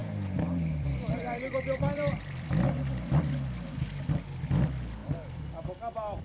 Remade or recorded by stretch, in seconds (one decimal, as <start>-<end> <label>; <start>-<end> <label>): 0.0-3.7 remade; 3.7-5.0 recorded; 5.0-6.2 remade